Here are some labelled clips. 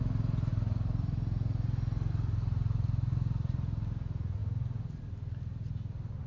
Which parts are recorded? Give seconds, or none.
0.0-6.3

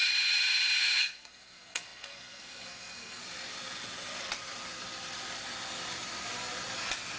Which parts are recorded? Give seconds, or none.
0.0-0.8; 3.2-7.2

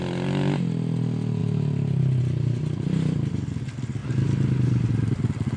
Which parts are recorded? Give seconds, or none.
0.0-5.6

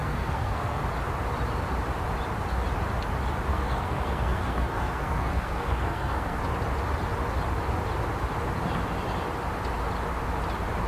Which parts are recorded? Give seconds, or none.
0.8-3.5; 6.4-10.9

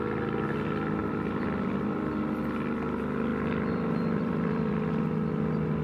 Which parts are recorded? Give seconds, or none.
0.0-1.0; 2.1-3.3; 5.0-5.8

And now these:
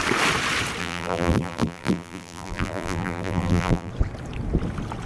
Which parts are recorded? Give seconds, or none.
0.0-0.8; 3.9-5.1